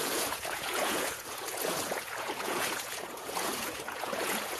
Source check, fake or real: fake